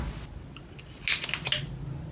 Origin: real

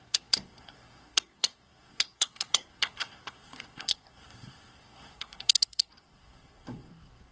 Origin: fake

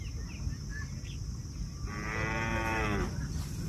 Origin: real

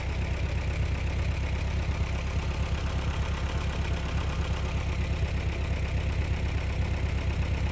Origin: real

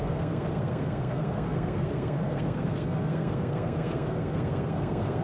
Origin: fake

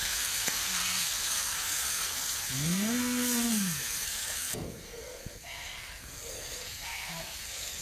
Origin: fake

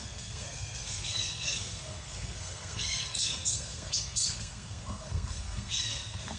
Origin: fake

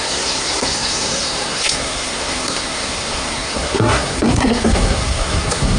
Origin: fake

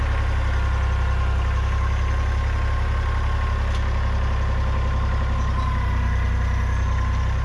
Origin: real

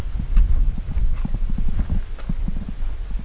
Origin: real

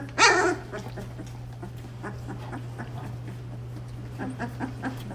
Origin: real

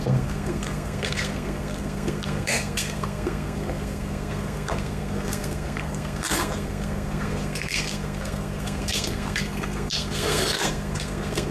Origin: fake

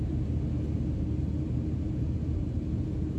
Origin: real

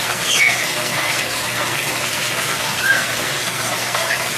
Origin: fake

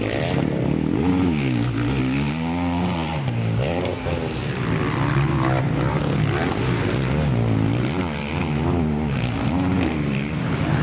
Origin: real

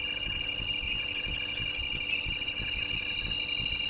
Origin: real